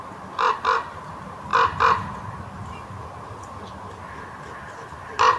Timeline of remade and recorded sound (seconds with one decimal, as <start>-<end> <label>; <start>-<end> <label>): 0.0-5.4 recorded